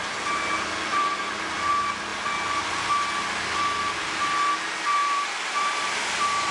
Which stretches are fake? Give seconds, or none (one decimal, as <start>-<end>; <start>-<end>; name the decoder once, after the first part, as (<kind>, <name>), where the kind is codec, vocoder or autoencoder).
0.9-1.7 (vocoder, BigVGAN v2); 5.0-6.5